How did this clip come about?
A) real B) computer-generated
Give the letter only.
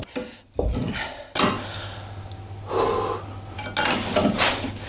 A